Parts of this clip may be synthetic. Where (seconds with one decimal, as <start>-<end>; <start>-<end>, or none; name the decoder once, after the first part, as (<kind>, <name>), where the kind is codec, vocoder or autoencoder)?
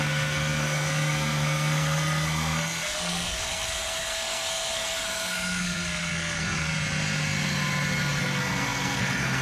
0.0-6.7 (codec, SNAC); 8.2-9.4